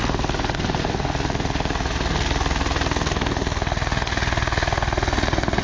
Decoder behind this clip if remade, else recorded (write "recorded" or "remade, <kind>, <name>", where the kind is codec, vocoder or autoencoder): recorded